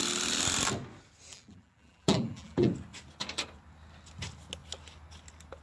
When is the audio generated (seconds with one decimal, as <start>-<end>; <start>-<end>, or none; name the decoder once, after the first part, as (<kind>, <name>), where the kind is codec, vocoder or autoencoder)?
1.3-2.7 (vocoder, BigVGAN v2)